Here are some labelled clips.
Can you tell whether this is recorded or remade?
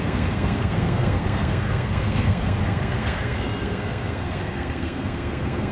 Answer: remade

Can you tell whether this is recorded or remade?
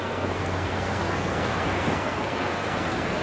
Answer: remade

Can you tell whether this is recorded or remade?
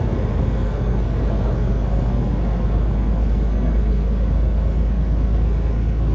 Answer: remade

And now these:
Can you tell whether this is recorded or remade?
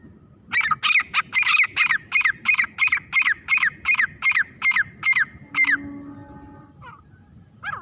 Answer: recorded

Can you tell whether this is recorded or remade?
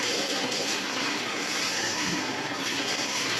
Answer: remade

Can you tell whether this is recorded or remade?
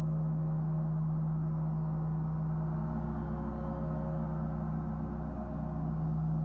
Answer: recorded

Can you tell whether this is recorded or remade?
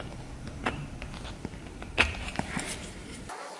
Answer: recorded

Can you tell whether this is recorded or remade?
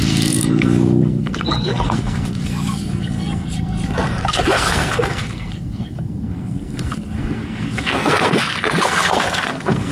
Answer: remade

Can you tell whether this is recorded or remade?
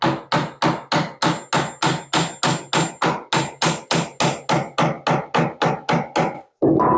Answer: recorded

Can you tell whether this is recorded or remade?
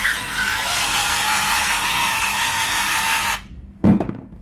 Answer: remade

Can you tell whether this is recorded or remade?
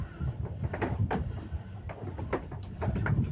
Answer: recorded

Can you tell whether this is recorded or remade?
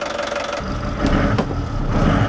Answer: recorded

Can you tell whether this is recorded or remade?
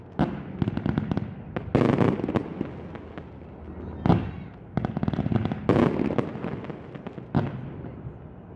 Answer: recorded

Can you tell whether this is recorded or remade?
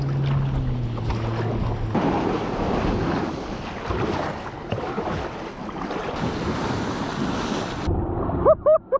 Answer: recorded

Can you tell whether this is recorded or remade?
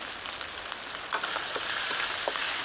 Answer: recorded